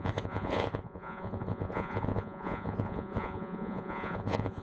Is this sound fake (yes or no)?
yes